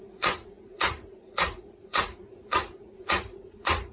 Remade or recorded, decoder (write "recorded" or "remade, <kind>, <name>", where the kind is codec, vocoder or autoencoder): remade, vocoder, Vocos